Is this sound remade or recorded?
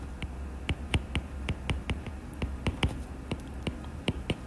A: recorded